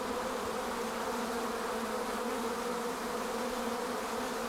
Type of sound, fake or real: real